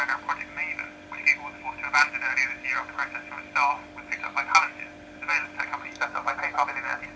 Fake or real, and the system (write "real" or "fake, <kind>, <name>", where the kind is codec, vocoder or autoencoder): real